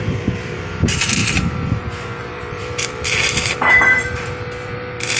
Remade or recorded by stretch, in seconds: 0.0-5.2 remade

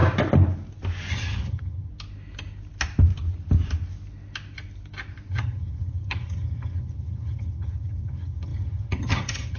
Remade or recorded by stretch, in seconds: 0.0-1.1 recorded; 1.1-1.9 remade; 1.9-5.3 recorded; 5.3-9.6 remade